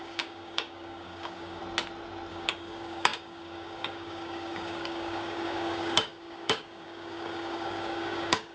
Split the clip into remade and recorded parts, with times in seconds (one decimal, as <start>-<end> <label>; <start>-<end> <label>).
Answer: 0.0-1.6 remade; 1.6-2.3 recorded; 2.3-8.5 remade